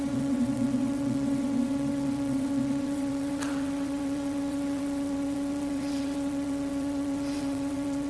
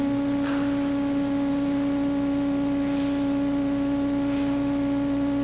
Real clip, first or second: second